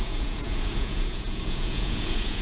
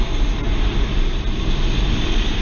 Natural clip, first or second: second